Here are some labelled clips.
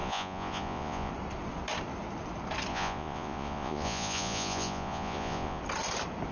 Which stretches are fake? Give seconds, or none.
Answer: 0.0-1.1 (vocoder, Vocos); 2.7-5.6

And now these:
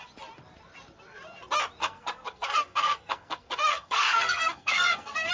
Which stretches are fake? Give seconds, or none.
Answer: 1.8-5.3 (codec, SNAC)

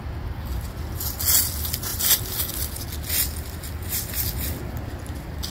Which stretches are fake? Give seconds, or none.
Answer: none

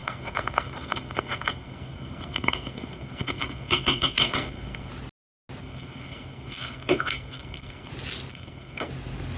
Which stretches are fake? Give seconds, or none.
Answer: 0.0-4.9 (codec, SNAC); 5.6-7.9; 8.3-8.9